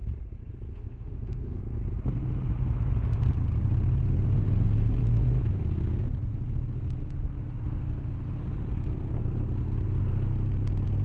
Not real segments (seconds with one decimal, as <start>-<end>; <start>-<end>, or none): 0.7-1.6